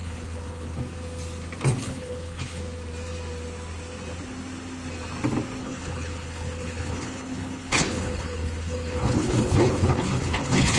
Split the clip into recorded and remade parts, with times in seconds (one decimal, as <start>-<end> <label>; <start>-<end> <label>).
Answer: 0.0-0.8 remade; 0.8-1.8 recorded; 1.8-2.6 remade; 2.6-5.6 recorded; 5.6-10.8 remade